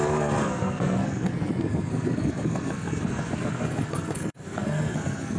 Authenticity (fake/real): fake